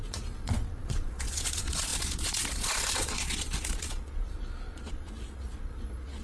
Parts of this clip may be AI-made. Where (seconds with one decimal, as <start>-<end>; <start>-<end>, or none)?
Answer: 0.0-6.2